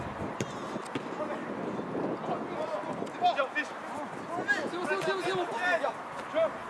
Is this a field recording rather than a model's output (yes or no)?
yes